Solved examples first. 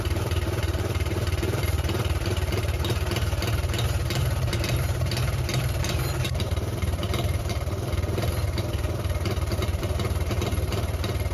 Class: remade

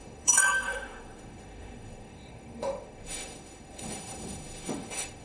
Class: remade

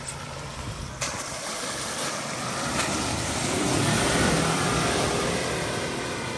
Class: remade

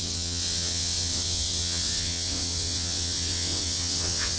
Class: remade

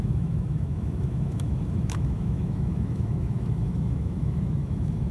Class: remade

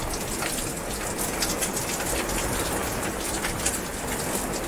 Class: recorded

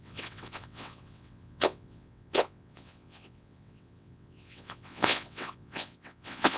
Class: remade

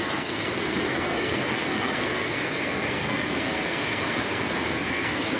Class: remade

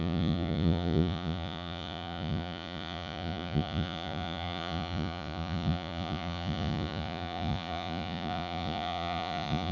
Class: remade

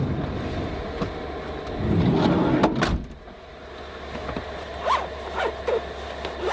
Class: recorded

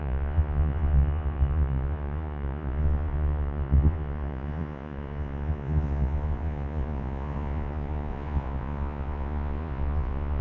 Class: remade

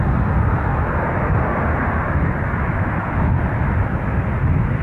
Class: recorded